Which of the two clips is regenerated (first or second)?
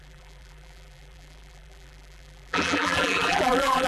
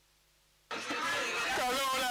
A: first